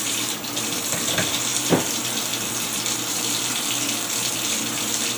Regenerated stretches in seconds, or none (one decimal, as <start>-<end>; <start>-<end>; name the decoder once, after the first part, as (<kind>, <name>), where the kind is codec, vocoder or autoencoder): 0.0-5.2 (vocoder, BigVGAN v2)